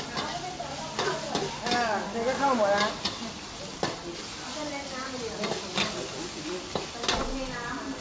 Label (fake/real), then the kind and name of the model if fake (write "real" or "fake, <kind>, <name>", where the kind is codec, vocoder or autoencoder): real